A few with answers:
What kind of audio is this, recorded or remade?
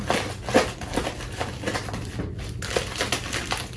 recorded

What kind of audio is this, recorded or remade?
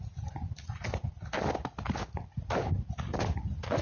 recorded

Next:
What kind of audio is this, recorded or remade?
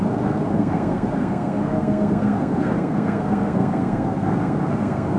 remade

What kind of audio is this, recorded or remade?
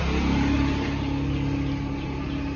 recorded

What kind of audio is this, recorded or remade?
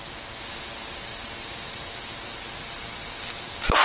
recorded